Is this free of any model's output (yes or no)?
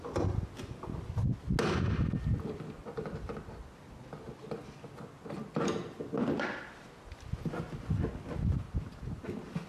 yes